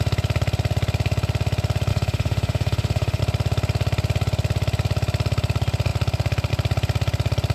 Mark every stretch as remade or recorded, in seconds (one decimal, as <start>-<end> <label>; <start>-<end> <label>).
0.0-1.9 recorded; 1.9-3.2 remade; 3.2-7.5 recorded